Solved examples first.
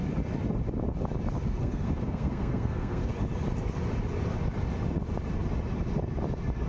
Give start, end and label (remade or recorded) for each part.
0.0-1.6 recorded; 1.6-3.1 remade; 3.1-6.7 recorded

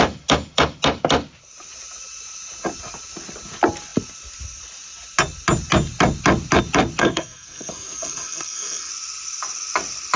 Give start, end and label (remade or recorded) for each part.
0.0-7.0 recorded; 7.0-8.9 remade; 8.9-10.2 recorded